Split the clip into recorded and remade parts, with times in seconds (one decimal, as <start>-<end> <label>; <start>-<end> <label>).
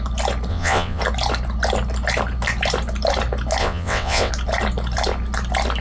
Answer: 0.0-0.5 recorded; 0.5-1.0 remade; 1.0-3.6 recorded; 3.6-4.3 remade; 4.3-5.8 recorded